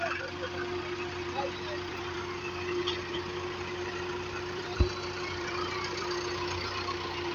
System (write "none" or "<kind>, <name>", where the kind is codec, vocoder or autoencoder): vocoder, BigVGAN v2